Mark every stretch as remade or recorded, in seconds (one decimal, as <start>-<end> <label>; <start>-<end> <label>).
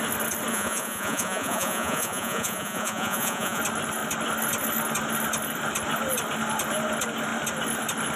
0.0-0.5 recorded; 0.5-3.6 remade; 3.6-8.2 recorded